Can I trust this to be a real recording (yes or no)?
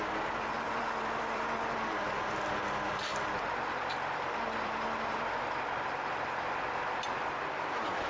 no